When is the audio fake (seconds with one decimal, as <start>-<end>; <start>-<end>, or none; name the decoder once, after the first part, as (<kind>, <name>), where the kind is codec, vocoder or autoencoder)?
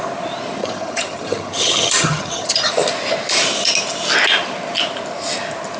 0.6-2.7 (vocoder, HiFi-GAN)